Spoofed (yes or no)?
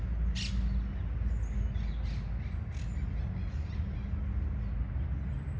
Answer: no